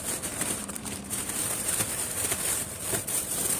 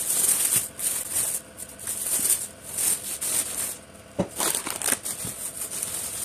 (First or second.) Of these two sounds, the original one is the second